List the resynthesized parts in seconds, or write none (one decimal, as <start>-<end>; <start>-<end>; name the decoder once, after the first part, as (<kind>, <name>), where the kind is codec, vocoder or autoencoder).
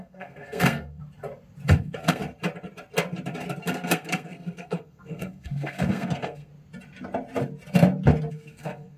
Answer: 0.0-1.0 (codec, SNAC); 1.7-2.2; 3.6-6.5; 8.3-9.0